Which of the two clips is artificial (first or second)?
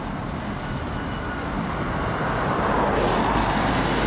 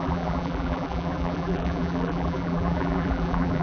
second